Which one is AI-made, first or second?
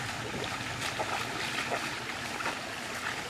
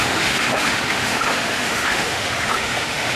second